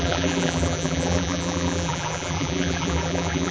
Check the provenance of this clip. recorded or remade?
remade